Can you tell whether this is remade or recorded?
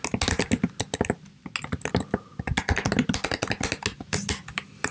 recorded